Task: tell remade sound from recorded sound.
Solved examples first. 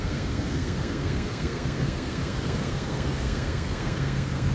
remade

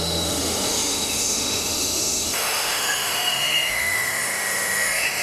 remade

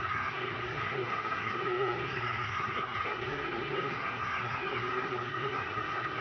remade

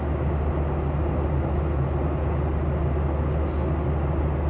recorded